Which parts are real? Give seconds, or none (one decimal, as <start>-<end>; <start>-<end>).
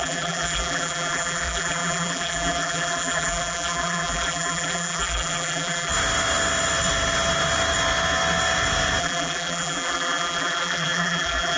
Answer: 5.9-9.0